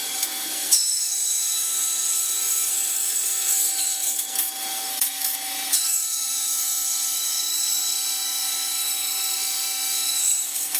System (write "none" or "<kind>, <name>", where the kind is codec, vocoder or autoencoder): codec, SNAC